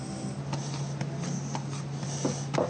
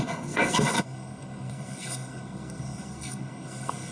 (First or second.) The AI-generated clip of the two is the second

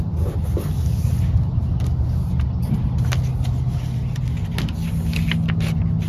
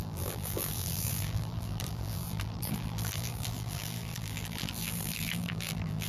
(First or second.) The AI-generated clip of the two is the second